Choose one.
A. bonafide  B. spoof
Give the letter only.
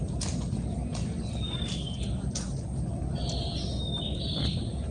A